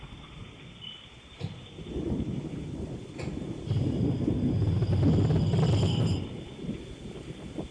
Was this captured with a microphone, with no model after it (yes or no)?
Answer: yes